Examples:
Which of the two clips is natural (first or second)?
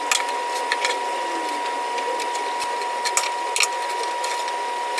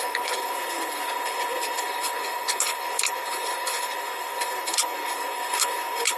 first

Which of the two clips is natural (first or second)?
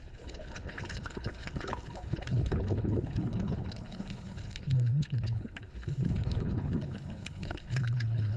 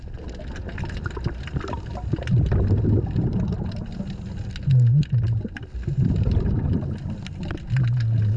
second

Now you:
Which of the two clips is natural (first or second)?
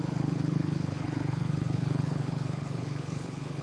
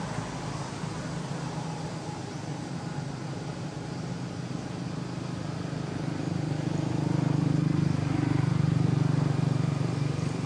second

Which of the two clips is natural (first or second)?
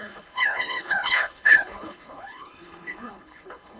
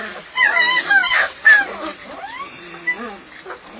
second